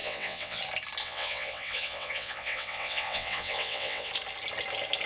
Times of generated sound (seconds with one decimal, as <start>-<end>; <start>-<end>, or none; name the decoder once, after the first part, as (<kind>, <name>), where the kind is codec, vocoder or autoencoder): 0.0-0.6 (vocoder, WaveNeXt); 1.0-4.1